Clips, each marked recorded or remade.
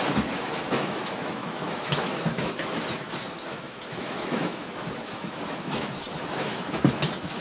remade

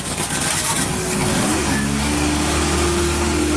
remade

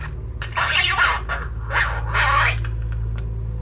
recorded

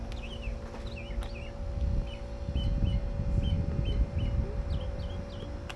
recorded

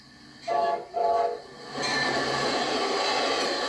recorded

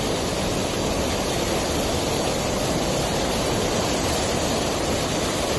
recorded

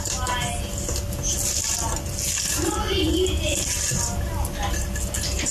recorded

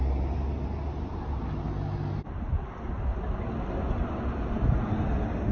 recorded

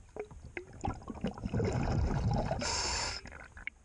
recorded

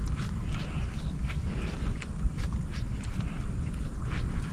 recorded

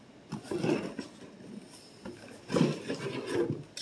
recorded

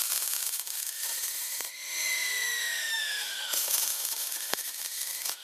remade